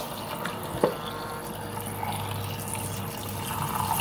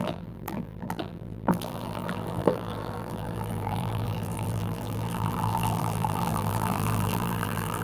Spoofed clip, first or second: second